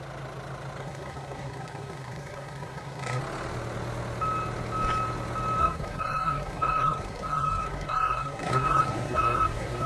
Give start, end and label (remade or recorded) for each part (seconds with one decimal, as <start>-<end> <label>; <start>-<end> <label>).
0.0-0.8 recorded; 0.8-3.2 remade; 3.2-5.6 recorded; 5.6-9.9 remade